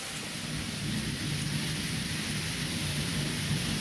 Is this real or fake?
real